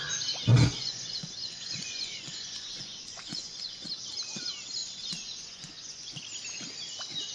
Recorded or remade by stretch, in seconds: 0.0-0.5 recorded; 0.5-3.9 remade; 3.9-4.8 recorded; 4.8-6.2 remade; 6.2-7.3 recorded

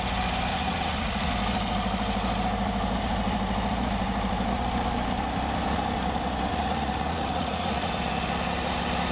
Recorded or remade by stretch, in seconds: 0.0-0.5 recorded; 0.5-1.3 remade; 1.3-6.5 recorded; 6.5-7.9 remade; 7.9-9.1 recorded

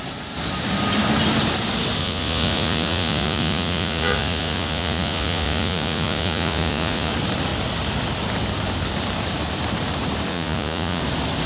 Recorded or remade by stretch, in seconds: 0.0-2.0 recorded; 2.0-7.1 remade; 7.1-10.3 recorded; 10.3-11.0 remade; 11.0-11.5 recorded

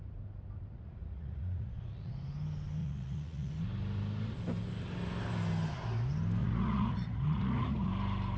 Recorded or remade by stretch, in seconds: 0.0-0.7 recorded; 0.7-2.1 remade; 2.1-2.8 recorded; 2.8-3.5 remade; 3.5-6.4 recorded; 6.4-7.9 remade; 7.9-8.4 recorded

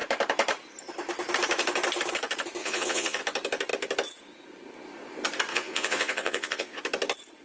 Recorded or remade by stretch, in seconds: 0.0-2.6 recorded; 2.6-3.2 remade; 3.2-5.5 recorded; 5.5-6.8 remade; 6.8-7.4 recorded

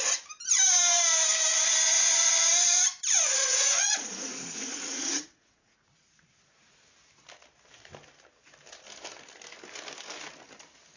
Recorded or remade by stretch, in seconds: 0.0-3.4 recorded; 3.4-6.8 remade; 6.8-11.0 recorded